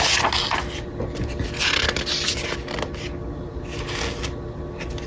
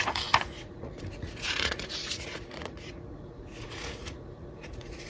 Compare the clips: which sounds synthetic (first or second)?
second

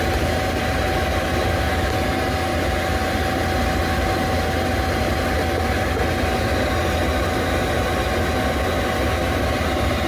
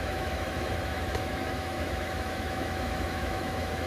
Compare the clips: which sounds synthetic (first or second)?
second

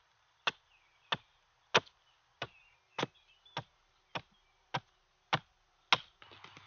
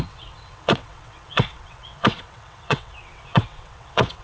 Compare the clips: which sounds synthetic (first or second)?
second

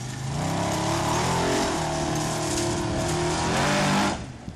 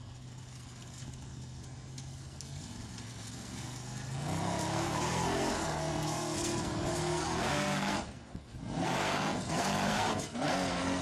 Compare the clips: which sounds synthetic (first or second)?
second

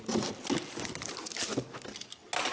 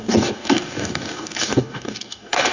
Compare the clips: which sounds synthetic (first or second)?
second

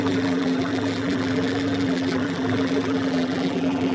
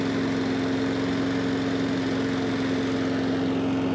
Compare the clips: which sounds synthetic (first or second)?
first